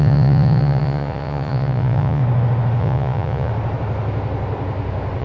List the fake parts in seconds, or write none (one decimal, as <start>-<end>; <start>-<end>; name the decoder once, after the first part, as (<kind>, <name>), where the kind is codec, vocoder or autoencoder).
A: 0.0-2.2 (vocoder, Vocos); 2.8-3.5